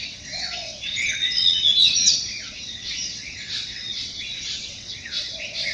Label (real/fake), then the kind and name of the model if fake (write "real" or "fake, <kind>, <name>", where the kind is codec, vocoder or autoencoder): fake, vocoder, WaveNeXt